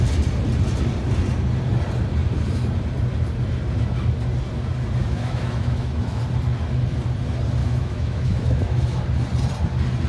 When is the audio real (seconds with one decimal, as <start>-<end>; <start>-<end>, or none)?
0.0-5.0; 6.2-7.6; 9.0-10.1